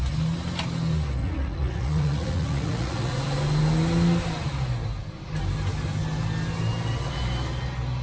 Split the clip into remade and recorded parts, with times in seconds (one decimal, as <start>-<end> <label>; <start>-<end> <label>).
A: 0.0-1.2 recorded; 1.2-3.2 remade; 3.2-8.0 recorded